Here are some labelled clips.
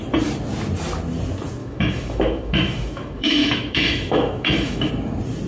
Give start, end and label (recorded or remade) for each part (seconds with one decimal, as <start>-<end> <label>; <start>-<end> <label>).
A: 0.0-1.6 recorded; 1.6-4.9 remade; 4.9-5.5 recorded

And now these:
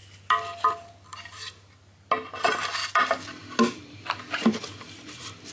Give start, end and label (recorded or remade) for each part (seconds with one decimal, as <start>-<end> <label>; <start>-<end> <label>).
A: 0.0-5.5 recorded

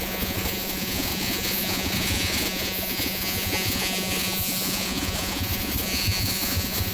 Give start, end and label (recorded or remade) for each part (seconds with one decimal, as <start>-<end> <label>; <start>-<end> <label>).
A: 0.0-6.9 remade